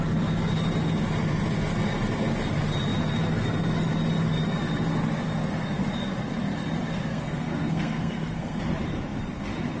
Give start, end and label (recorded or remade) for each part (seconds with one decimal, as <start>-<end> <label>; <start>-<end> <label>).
0.0-7.1 recorded; 7.1-8.6 remade; 8.6-9.8 recorded